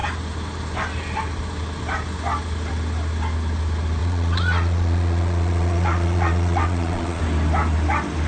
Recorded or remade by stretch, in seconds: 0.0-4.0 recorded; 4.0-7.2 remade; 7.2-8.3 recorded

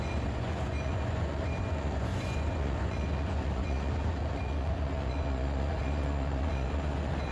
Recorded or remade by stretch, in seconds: 0.0-7.3 remade

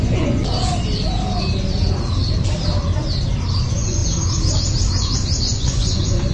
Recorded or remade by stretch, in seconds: 0.0-0.4 remade; 0.4-3.6 recorded; 3.6-4.0 remade; 4.0-5.4 recorded; 5.4-6.3 remade

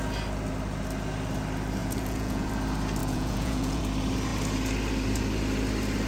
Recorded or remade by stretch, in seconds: 0.0-1.8 recorded; 1.8-2.5 remade; 2.5-3.0 recorded; 3.0-3.8 remade; 3.8-6.1 recorded